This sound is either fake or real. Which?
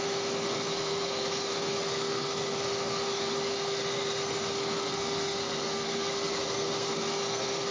fake